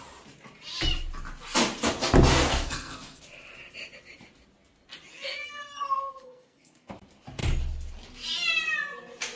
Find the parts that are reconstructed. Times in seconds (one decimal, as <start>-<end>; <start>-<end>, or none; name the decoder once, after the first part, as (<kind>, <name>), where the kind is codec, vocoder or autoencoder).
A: 2.5-3.2 (codec, SNAC); 5.1-6.9

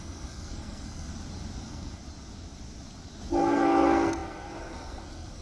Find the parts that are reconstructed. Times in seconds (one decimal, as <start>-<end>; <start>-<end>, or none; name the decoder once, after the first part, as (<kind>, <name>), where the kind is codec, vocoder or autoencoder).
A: 0.0-1.1 (codec, SNAC); 1.6-2.0; 3.3-5.4

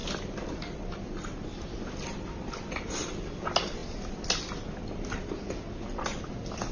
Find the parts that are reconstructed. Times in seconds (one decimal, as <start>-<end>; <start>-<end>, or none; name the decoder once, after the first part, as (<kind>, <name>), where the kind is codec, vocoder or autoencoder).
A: none

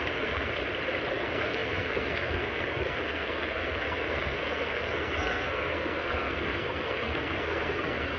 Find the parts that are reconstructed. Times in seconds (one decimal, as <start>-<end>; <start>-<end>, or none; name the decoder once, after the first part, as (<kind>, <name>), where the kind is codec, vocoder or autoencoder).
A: 0.0-0.6 (codec, SNAC); 1.1-8.2

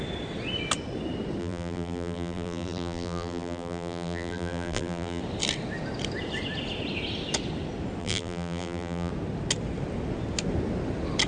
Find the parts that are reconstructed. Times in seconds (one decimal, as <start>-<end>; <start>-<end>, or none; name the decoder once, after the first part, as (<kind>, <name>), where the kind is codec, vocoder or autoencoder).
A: 1.4-5.2 (vocoder, BigVGAN v2); 8.0-9.1

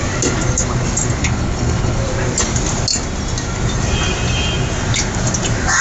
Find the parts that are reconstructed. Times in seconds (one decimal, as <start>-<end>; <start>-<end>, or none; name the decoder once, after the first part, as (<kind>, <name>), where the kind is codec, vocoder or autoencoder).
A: 1.2-2.0 (codec, HILCodec)

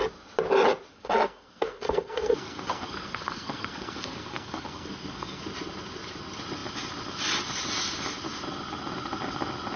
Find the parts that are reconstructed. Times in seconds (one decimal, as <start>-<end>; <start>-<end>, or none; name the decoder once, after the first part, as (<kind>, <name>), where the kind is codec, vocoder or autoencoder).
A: 0.9-5.4 (codec, SNAC)

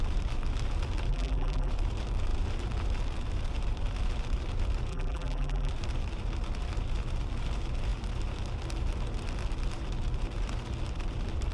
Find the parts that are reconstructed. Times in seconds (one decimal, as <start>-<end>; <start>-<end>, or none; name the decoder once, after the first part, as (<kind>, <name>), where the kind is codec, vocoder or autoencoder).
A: 1.1-1.7 (vocoder, BigVGAN v2); 4.9-5.7